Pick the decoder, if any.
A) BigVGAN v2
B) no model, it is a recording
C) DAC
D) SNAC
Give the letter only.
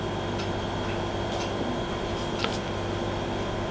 B